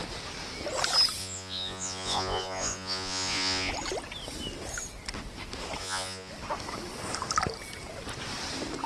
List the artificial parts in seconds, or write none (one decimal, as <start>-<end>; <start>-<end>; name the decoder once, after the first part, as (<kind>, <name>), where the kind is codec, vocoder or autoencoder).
1.2-3.7 (vocoder, Vocos); 5.8-6.3